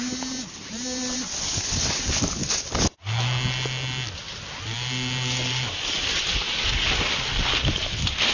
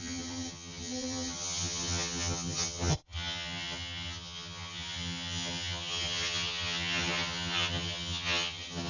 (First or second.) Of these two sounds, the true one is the first